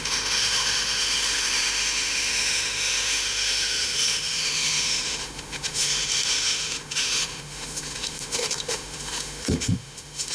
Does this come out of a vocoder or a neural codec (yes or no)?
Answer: yes